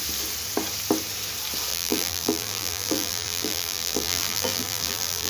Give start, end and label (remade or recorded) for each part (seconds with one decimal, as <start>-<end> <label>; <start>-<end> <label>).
0.0-1.7 recorded; 1.7-5.3 remade